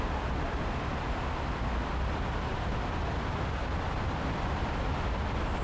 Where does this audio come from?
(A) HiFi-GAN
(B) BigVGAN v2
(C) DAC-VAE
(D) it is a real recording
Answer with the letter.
D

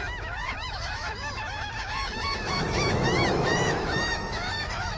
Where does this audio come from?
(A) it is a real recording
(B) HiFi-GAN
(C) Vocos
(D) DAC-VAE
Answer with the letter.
D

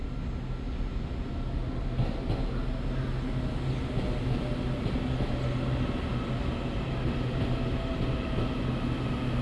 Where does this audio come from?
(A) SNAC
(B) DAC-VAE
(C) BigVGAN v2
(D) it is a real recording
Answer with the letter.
D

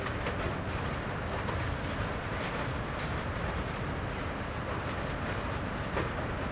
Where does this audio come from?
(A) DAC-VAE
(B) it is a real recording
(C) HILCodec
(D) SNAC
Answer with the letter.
B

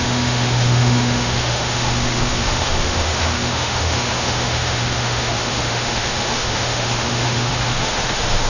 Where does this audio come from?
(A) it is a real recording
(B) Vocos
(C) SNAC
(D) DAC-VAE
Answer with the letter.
D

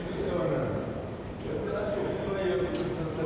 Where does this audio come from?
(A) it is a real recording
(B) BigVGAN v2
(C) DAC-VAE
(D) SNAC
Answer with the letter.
A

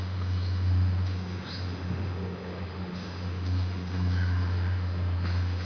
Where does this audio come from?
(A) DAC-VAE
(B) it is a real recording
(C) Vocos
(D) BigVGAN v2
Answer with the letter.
A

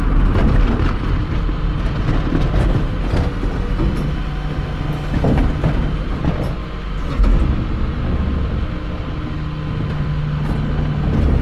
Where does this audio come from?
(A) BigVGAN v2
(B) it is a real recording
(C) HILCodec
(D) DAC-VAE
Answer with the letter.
B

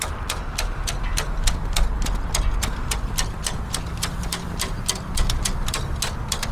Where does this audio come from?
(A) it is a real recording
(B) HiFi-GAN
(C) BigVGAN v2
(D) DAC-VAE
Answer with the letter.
A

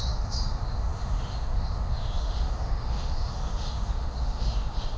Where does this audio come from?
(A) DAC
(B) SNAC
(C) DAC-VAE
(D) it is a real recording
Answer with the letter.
C